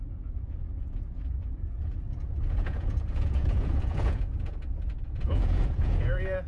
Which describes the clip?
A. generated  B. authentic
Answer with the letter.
A